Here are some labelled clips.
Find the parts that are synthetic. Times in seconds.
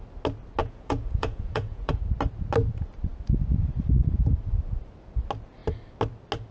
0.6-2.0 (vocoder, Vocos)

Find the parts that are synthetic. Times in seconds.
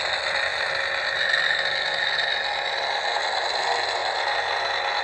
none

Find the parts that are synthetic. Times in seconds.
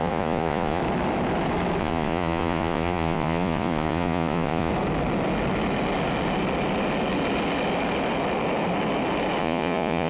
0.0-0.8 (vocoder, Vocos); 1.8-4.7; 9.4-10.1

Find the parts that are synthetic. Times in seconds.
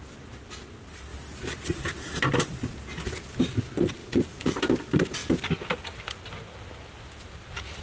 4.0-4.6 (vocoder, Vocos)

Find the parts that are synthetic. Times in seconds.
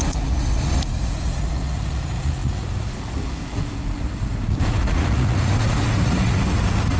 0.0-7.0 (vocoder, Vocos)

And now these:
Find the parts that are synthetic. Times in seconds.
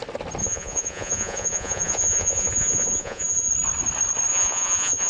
0.4-3.5 (vocoder, Vocos); 4.3-5.1